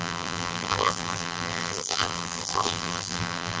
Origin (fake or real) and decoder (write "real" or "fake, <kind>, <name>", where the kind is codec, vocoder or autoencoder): fake, vocoder, BigVGAN v2